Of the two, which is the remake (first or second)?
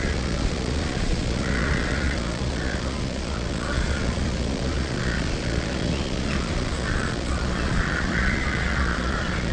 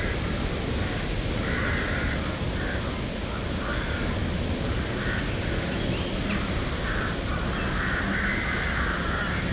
first